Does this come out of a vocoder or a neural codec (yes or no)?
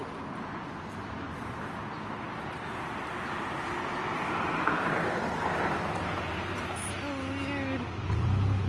no